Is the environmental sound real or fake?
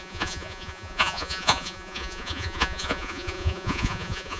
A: fake